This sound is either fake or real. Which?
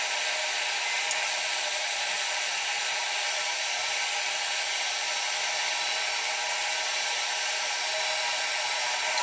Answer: real